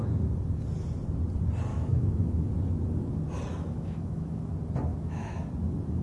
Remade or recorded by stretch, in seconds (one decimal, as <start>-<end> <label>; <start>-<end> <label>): 0.0-1.7 recorded; 1.7-2.5 remade; 2.5-3.5 recorded; 3.5-4.5 remade; 4.5-4.9 recorded; 4.9-5.4 remade; 5.4-6.0 recorded